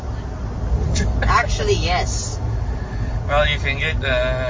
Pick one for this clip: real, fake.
real